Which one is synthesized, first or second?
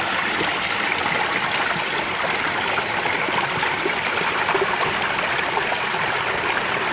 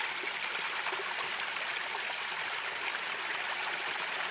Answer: first